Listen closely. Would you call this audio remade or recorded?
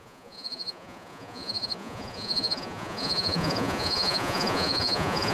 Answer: remade